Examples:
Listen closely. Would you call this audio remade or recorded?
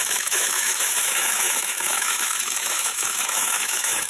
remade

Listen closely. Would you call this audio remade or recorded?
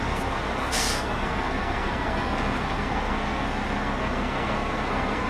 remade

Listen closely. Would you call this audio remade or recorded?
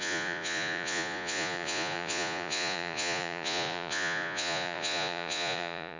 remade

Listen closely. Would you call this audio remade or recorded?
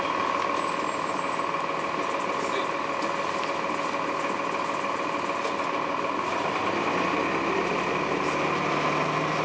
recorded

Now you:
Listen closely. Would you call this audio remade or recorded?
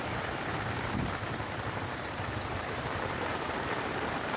remade